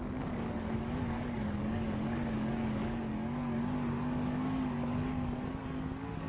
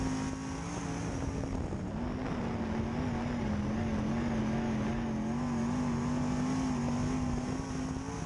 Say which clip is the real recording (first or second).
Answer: second